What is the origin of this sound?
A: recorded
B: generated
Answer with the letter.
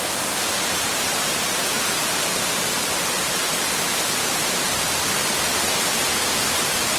B